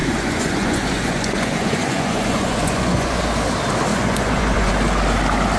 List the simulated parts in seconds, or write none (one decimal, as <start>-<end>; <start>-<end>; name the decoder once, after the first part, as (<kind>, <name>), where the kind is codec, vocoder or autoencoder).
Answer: 0.0-3.2 (vocoder, Vocos); 3.9-4.7